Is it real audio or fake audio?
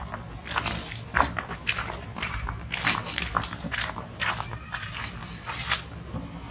real